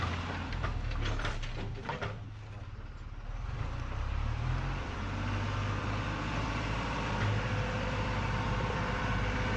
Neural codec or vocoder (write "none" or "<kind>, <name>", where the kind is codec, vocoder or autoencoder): vocoder, BigVGAN v2